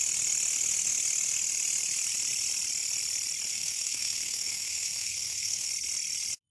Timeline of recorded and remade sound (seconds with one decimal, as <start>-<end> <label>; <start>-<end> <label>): 0.0-3.5 recorded; 3.5-5.7 remade; 5.7-6.5 recorded

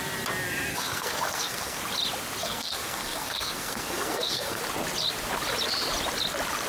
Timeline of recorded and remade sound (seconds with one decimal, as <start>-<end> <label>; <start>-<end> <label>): 0.0-0.7 recorded; 0.7-1.8 remade; 1.8-2.4 recorded; 2.4-4.6 remade; 4.6-6.7 recorded

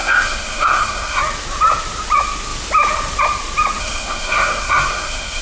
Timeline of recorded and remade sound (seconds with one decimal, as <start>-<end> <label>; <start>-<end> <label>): 0.0-1.2 remade; 1.2-3.8 recorded; 3.8-5.4 remade

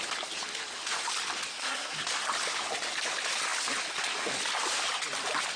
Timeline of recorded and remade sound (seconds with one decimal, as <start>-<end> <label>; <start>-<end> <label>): 0.0-1.5 recorded; 1.5-2.0 remade; 2.0-5.6 recorded

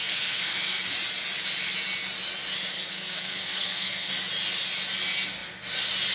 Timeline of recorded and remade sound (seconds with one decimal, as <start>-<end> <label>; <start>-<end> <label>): 0.0-0.8 remade; 0.8-2.7 recorded; 2.7-4.1 remade; 4.1-6.1 recorded

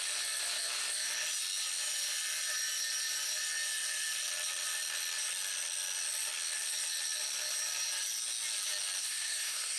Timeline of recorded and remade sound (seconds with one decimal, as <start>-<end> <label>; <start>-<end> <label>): 0.0-9.0 recorded; 9.0-9.8 remade

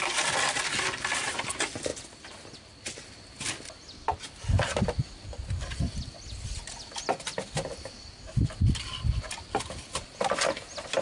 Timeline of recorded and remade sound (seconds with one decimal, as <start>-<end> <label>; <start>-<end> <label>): 0.0-11.0 recorded